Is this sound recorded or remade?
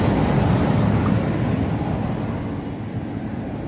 recorded